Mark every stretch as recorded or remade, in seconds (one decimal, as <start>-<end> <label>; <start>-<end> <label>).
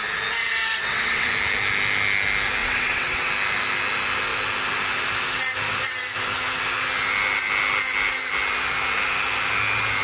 0.0-0.4 recorded; 0.4-1.3 remade; 1.3-2.6 recorded; 2.6-3.3 remade; 3.3-10.0 recorded